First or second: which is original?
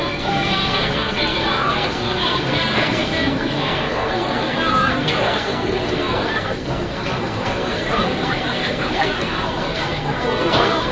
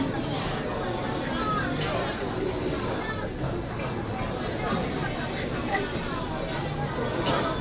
second